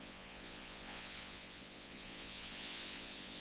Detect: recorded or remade remade